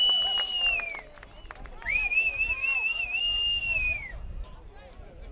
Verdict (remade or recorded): recorded